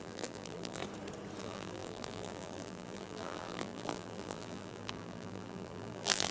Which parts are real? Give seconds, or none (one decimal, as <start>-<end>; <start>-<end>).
0.8-1.4